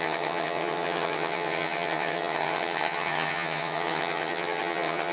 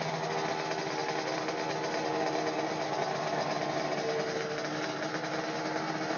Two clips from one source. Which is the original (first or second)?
second